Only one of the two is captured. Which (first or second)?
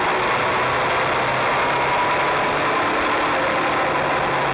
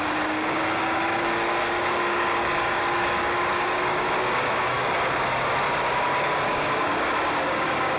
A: first